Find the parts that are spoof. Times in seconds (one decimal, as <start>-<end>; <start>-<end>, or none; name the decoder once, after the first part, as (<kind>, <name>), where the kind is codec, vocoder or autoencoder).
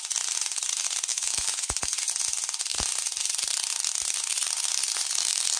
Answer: 1.1-1.8 (autoencoder, DAC-VAE)